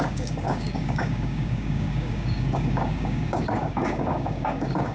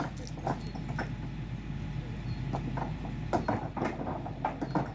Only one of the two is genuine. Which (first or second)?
second